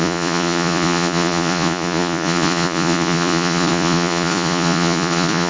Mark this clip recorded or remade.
remade